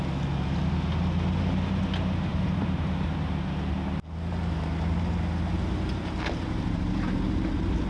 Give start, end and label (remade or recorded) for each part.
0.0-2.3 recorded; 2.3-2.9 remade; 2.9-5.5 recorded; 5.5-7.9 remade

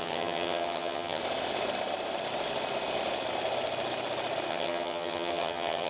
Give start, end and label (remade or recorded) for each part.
0.0-1.2 remade; 1.2-4.5 recorded; 4.5-5.9 remade

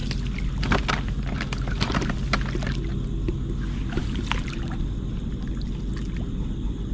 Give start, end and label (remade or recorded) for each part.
0.0-6.9 recorded

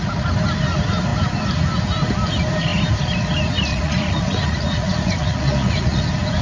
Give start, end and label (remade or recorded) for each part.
0.0-3.7 recorded; 3.7-6.0 remade; 6.0-6.4 recorded

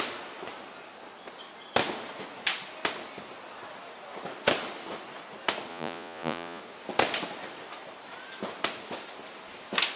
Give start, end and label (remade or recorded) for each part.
0.0-5.7 recorded; 5.7-6.6 remade; 6.6-9.9 recorded